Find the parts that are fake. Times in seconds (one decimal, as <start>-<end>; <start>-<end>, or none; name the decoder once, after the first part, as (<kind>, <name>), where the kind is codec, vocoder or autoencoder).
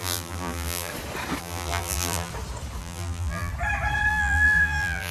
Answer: 0.0-0.9 (vocoder, BigVGAN v2); 1.4-2.3; 2.8-3.5; 4.1-5.1